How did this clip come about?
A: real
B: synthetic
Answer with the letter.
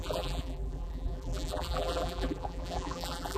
B